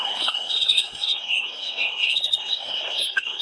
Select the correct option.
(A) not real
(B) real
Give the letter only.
A